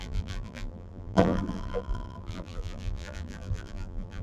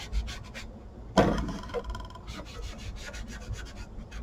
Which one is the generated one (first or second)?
first